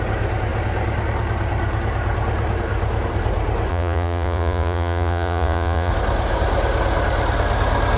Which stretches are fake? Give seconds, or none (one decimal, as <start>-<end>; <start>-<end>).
3.7-5.9